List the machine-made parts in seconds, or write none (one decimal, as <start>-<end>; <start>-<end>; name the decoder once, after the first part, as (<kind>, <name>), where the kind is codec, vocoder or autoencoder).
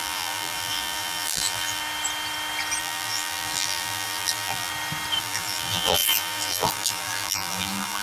0.0-1.8 (vocoder, BigVGAN v2); 2.8-4.7; 5.2-8.0